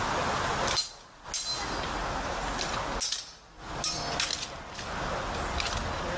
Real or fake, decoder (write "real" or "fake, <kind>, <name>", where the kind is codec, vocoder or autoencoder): real